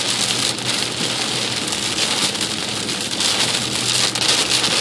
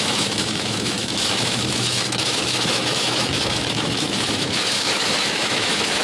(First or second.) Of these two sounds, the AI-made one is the second